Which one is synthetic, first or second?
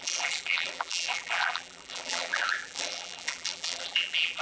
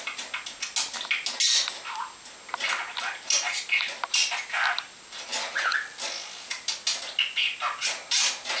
first